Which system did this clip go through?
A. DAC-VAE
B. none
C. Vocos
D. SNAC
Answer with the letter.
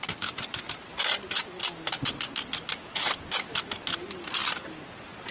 B